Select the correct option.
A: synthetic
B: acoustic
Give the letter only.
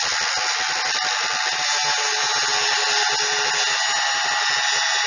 B